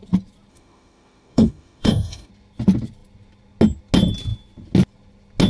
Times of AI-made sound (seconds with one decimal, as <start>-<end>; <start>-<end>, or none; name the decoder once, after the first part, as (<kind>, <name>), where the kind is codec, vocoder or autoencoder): 0.5-2.3 (autoencoder, DAC-VAE)